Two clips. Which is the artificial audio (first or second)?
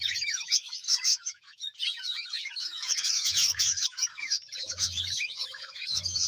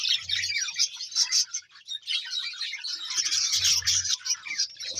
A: first